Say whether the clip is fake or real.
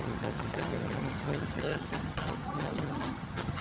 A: fake